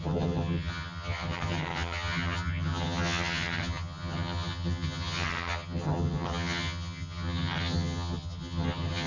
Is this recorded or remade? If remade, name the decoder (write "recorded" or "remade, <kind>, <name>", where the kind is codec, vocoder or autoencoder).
remade, vocoder, HiFi-GAN